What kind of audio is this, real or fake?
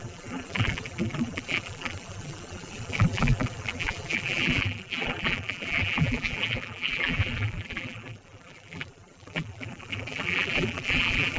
fake